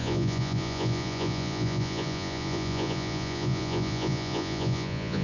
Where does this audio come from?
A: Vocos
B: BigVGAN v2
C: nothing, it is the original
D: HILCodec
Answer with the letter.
A